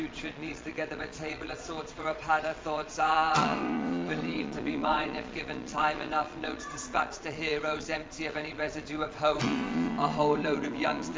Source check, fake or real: fake